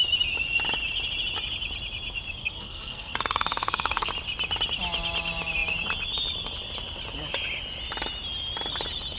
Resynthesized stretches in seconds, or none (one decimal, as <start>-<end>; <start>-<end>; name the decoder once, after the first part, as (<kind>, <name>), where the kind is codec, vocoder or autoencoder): 2.4-4.1 (codec, SNAC)